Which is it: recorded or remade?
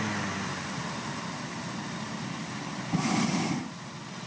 recorded